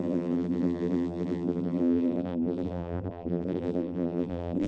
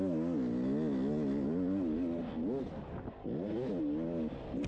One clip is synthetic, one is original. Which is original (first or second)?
second